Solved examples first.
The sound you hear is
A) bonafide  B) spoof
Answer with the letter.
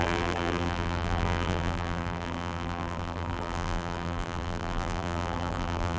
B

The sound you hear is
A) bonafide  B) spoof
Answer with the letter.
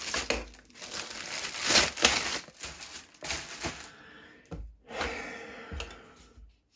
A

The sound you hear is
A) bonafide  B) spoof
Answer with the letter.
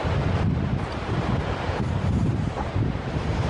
B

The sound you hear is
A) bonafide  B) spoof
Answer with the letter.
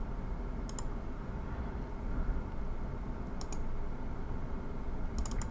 A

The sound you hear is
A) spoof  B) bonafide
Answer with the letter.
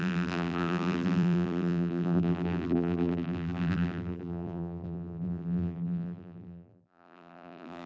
A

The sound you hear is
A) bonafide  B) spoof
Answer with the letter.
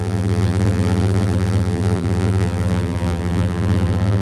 B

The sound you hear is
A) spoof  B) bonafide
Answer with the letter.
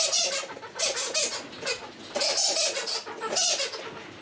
B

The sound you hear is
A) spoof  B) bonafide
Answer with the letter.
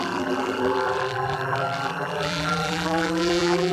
A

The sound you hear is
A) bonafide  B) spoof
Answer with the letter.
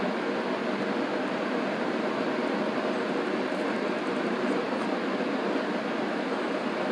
B